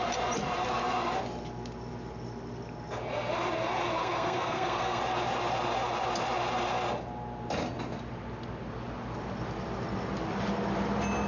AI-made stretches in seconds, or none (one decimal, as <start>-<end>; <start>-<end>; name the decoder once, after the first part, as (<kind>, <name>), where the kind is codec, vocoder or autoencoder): 4.0-5.0 (codec, SNAC)